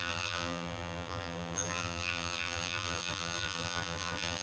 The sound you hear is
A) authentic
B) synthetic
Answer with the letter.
B